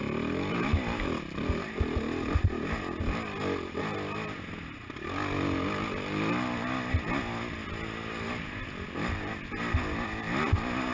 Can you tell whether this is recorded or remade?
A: recorded